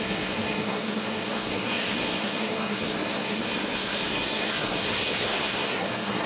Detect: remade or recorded remade